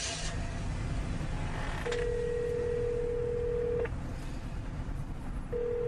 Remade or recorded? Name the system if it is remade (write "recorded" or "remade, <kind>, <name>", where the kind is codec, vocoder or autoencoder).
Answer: recorded